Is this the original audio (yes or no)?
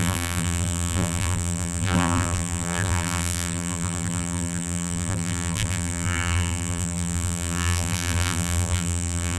no